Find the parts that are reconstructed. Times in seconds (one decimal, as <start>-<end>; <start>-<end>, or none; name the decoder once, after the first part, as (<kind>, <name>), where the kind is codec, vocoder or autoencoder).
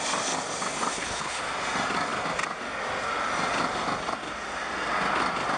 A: 0.9-1.4 (codec, HILCodec)